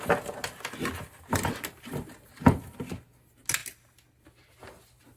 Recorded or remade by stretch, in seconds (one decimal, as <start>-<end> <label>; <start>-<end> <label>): 0.0-5.2 recorded